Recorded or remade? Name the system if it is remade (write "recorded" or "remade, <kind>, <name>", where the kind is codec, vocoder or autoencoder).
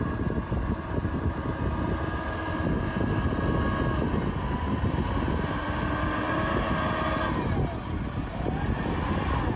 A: recorded